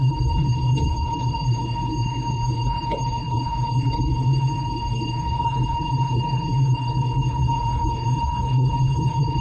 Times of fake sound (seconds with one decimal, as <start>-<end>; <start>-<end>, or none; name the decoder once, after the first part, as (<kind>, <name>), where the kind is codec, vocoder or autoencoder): 0.0-9.4 (codec, HILCodec)